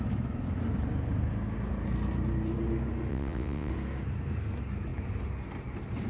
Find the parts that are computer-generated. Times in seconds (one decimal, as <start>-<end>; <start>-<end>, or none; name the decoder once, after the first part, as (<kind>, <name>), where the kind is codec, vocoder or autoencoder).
3.1-3.7 (vocoder, WaveNeXt)